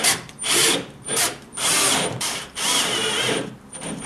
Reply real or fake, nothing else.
fake